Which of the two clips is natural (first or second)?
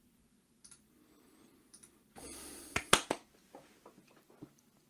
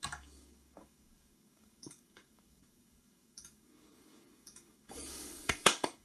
first